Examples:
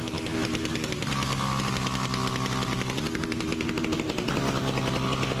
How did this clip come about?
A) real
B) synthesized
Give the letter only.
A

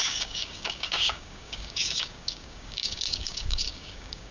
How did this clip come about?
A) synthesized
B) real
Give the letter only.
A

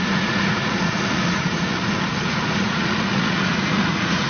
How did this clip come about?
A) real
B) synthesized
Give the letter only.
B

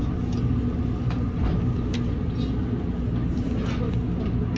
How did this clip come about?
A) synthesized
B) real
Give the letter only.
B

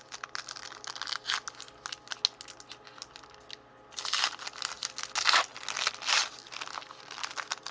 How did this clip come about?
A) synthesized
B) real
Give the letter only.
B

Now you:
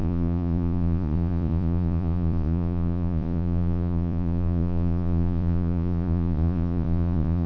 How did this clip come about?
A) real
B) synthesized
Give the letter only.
B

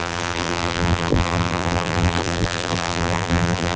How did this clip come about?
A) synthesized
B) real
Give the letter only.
A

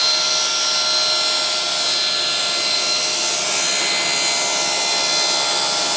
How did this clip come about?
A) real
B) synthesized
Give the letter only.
A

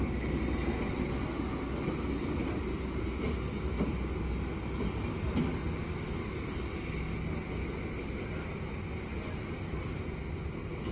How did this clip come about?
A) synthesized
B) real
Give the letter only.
B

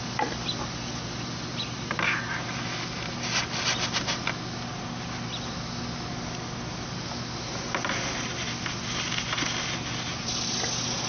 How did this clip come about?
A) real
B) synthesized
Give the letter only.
A